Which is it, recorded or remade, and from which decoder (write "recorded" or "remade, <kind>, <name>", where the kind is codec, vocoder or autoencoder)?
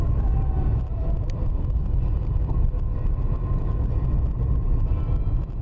recorded